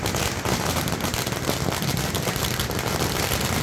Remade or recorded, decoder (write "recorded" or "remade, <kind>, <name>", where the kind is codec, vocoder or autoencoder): recorded